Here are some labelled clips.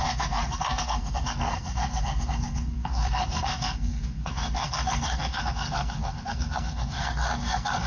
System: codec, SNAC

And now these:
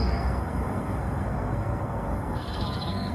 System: codec, SNAC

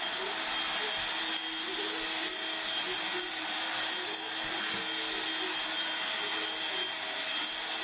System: none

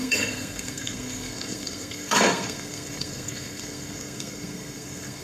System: codec, SNAC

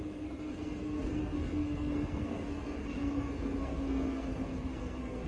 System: codec, SNAC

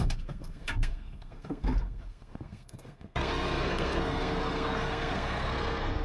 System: codec, SNAC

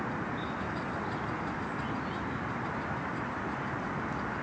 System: none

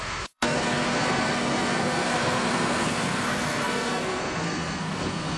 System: codec, SNAC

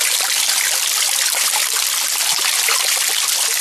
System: none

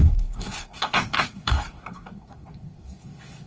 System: codec, SNAC